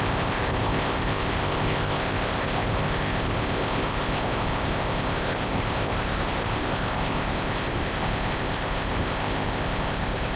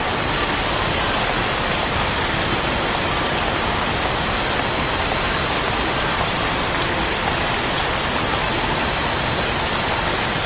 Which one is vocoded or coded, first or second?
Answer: first